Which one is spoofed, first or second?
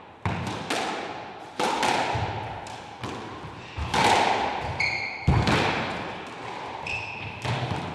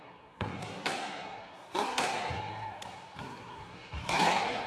second